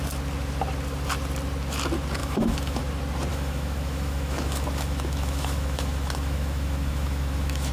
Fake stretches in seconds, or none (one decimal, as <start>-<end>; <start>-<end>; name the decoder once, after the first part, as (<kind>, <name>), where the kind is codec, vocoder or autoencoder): 2.2-2.8 (autoencoder, DAC-VAE); 3.3-7.7